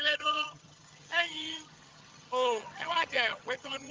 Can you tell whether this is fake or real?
fake